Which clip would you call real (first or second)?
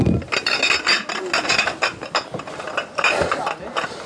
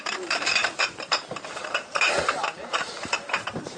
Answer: first